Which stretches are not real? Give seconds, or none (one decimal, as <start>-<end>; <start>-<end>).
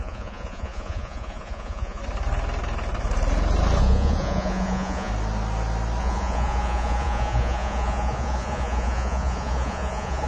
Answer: 0.0-2.0; 3.8-5.1; 6.0-10.3